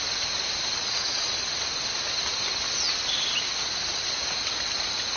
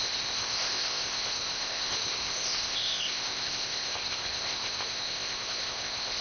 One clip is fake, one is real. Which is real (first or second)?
first